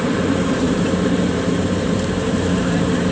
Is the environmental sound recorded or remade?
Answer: remade